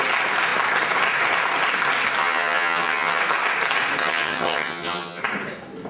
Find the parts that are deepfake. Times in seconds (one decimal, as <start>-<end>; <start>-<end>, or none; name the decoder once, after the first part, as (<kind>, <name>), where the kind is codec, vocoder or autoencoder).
2.2-3.2 (vocoder, HiFi-GAN); 4.0-5.2